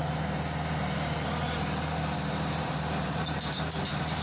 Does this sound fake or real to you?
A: fake